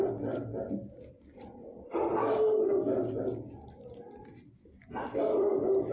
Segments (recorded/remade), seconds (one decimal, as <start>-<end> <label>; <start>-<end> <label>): 0.0-5.9 recorded